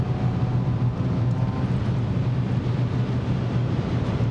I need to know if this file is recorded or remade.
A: recorded